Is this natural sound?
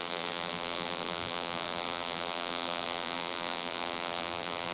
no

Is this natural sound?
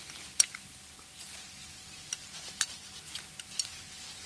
yes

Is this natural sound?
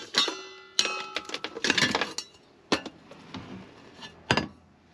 yes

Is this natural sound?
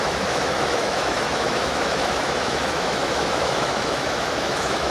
no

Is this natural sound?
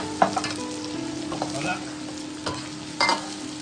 yes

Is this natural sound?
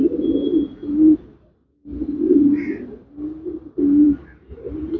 yes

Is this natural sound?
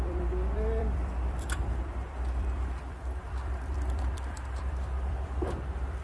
no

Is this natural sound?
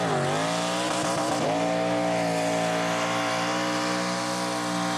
yes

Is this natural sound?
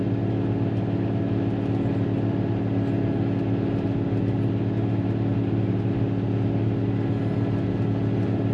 yes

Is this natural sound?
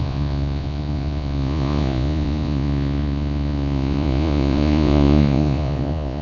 no